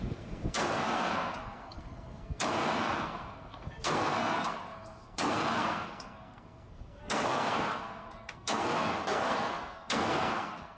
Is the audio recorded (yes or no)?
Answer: no